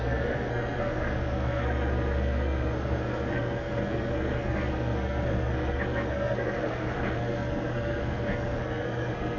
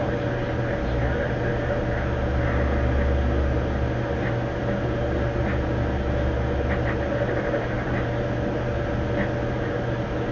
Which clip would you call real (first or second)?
second